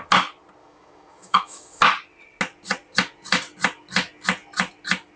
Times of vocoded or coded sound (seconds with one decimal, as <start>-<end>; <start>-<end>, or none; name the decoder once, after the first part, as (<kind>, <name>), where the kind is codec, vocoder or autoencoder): 0.6-1.8 (autoencoder, DAC-VAE)